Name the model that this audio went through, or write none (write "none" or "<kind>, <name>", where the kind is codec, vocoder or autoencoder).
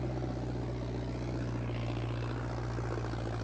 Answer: none